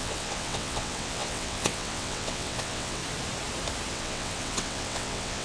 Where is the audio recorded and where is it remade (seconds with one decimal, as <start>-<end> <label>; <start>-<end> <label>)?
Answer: 0.0-3.0 remade; 3.0-3.9 recorded; 3.9-5.4 remade